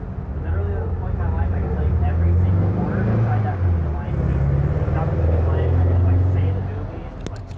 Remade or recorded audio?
recorded